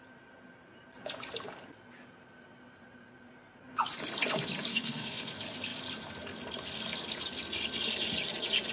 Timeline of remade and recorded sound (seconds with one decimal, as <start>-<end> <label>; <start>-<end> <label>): 0.0-4.7 recorded; 4.7-5.3 remade; 5.3-8.7 recorded